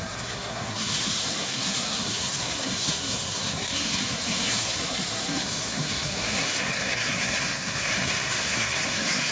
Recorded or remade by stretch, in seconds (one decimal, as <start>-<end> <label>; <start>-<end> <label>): 0.0-9.3 remade